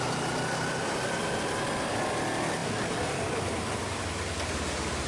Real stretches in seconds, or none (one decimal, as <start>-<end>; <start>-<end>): 0.0-2.6; 4.0-5.1